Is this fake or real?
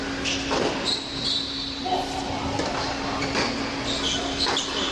real